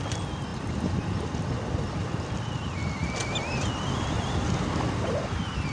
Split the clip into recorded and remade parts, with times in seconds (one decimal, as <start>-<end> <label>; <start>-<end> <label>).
0.0-5.7 recorded